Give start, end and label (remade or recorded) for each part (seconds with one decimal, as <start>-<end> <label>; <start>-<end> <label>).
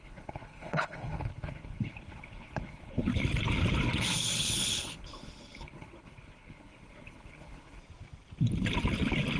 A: 0.0-3.1 remade; 3.1-4.0 recorded; 4.0-7.8 remade; 7.8-9.4 recorded